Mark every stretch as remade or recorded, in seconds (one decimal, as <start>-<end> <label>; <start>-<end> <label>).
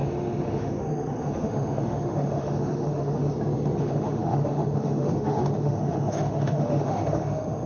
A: 0.0-3.2 remade; 3.2-3.8 recorded; 3.8-7.7 remade